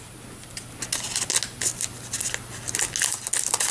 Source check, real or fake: real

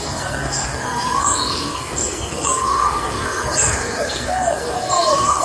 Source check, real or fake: fake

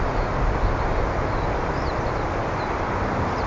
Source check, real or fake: real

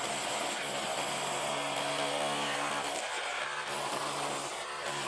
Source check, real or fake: real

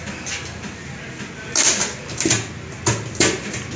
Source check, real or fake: real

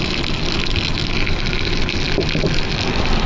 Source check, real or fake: real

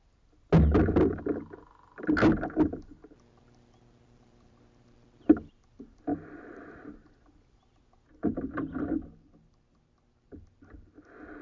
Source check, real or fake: real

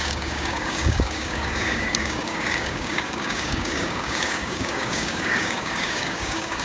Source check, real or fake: fake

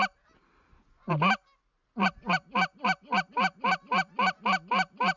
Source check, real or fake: real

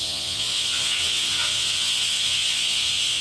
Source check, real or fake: fake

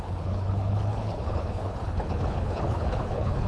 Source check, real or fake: fake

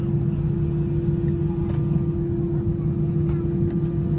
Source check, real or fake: real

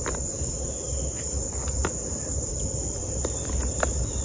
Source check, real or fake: real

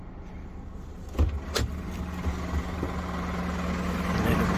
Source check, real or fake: real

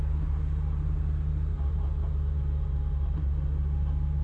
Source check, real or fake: real